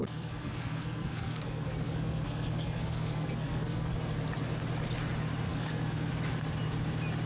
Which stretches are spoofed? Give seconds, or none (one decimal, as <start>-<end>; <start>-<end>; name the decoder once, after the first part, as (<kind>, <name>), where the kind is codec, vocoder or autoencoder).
0.0-3.9 (codec, SNAC); 5.5-6.1